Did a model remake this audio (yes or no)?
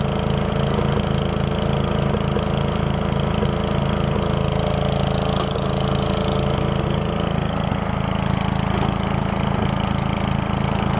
no